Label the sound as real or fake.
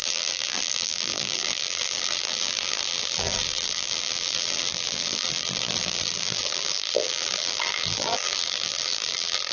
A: fake